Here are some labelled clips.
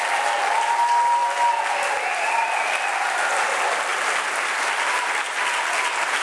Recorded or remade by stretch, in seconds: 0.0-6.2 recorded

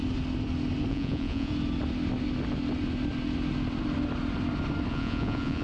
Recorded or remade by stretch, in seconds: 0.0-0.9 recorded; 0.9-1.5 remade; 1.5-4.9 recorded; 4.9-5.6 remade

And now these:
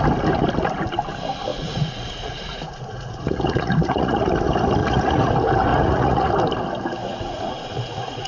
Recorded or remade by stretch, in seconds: 0.0-1.5 recorded; 1.5-4.3 remade; 4.3-4.8 recorded; 4.8-5.3 remade; 5.3-5.7 recorded; 5.7-6.3 remade; 6.3-7.0 recorded; 7.0-8.3 remade

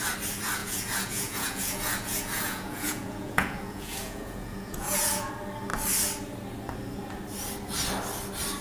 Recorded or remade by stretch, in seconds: 0.0-0.6 recorded; 0.6-5.3 remade; 5.3-8.6 recorded

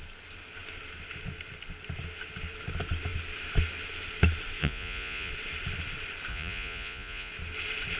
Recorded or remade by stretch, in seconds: 0.0-4.6 recorded; 4.6-5.3 remade; 5.3-6.3 recorded; 6.3-7.3 remade; 7.3-8.0 recorded